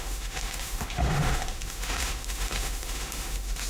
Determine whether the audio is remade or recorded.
remade